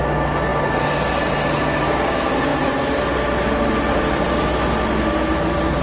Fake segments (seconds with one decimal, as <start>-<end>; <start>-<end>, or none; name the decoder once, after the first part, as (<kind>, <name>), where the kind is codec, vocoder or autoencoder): none